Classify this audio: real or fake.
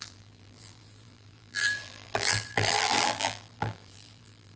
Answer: fake